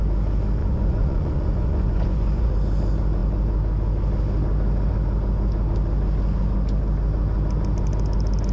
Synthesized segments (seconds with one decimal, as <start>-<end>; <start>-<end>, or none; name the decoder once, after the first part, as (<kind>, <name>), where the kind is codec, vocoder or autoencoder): 0.6-2.5 (vocoder, Vocos)